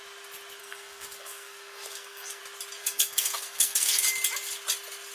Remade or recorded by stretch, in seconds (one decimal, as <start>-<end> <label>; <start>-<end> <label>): 0.0-0.6 recorded; 0.6-2.4 remade; 2.4-2.8 recorded; 2.8-4.0 remade; 4.0-5.1 recorded